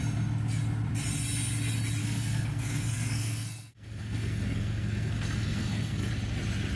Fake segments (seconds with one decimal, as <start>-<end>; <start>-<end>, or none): 2.0-6.1